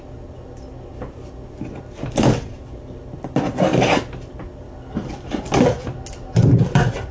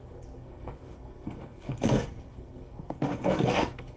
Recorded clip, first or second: first